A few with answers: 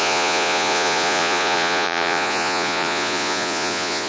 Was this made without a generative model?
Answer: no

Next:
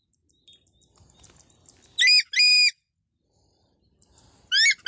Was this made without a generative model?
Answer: yes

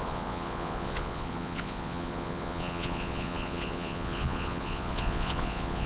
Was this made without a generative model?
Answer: no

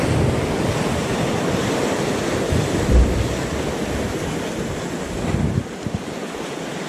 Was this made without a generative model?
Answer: yes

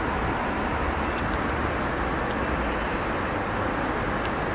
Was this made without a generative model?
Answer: yes